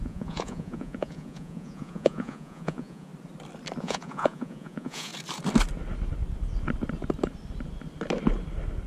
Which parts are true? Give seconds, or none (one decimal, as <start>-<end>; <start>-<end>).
3.1-3.8; 5.1-8.9